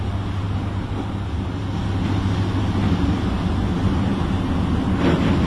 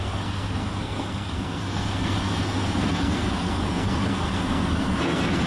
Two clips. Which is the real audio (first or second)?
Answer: first